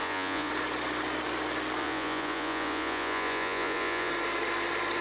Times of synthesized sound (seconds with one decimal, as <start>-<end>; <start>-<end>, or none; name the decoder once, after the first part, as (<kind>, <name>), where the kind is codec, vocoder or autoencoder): 0.0-0.5 (vocoder, Vocos); 1.8-4.1